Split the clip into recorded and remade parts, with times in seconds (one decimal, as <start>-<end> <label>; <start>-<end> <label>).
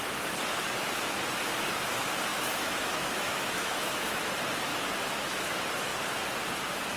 0.0-2.3 recorded; 2.3-4.2 remade; 4.2-4.7 recorded; 4.7-5.5 remade; 5.5-7.0 recorded